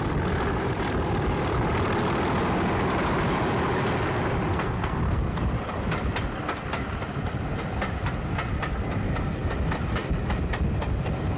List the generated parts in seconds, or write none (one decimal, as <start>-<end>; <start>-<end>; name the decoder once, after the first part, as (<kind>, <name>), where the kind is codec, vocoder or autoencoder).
4.5-5.4 (codec, SNAC)